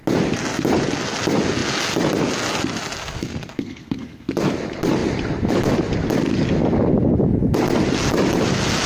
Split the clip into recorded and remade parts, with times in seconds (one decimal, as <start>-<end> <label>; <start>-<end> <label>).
0.0-3.0 recorded; 3.0-4.3 remade; 4.3-8.9 recorded